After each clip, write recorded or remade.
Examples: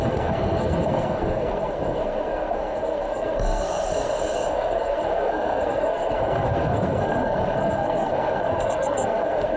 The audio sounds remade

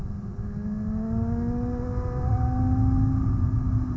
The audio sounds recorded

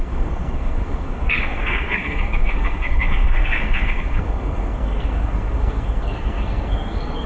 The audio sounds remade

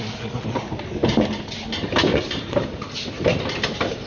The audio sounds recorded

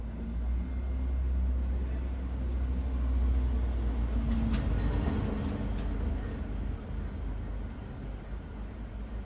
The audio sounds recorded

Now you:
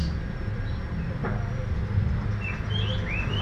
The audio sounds recorded